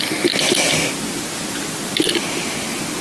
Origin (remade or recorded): recorded